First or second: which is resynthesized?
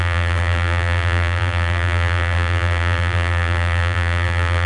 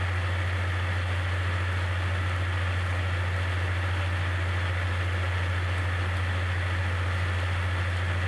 first